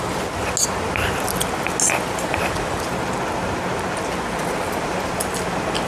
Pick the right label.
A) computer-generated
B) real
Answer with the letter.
B